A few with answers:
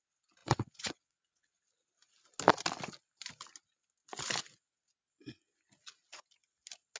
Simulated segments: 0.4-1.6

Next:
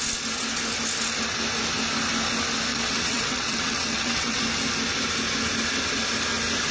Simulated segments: 2.7-4.4